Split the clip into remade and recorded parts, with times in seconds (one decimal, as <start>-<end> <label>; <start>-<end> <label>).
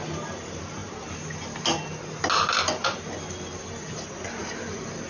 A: 0.0-5.1 recorded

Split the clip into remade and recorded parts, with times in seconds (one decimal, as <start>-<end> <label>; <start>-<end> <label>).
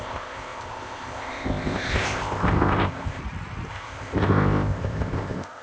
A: 0.0-3.2 remade; 3.2-3.7 recorded; 3.7-5.6 remade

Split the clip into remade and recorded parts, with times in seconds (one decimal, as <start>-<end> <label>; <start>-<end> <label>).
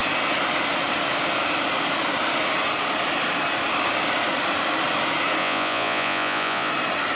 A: 0.0-5.4 recorded; 5.4-6.7 remade; 6.7-7.2 recorded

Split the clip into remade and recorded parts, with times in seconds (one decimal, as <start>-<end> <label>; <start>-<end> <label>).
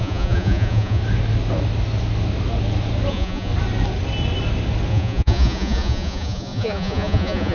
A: 0.0-1.0 remade; 1.0-3.1 recorded; 3.1-3.5 remade; 3.5-4.9 recorded; 4.9-7.5 remade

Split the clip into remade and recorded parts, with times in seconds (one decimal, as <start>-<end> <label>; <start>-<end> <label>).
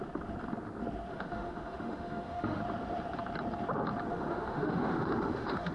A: 0.0-1.1 recorded; 1.1-2.6 remade; 2.6-4.1 recorded; 4.1-5.7 remade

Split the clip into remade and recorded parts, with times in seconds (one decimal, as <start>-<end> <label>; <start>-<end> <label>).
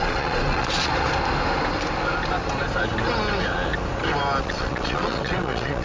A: 0.0-0.9 remade; 0.9-4.4 recorded; 4.4-5.8 remade